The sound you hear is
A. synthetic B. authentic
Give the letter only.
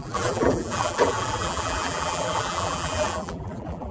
A